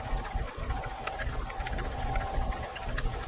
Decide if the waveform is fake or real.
real